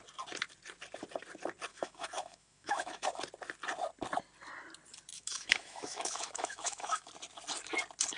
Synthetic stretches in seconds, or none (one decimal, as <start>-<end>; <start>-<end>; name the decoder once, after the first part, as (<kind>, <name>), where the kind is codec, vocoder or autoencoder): 1.7-3.2 (autoencoder, DAC-VAE); 5.1-7.1